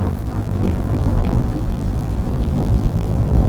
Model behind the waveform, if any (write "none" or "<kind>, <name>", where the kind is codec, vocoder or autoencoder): vocoder, BigVGAN v2